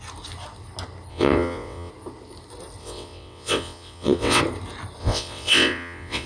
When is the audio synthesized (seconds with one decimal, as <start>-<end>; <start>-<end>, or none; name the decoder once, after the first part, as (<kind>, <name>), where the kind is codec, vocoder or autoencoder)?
1.1-1.9 (vocoder, WaveNeXt); 2.8-4.4; 5.0-6.3